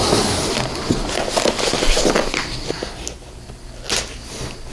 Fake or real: real